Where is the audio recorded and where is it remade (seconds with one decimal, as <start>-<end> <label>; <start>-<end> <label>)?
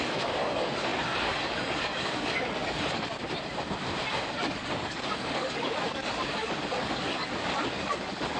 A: 0.0-3.2 remade; 3.2-4.3 recorded; 4.3-8.4 remade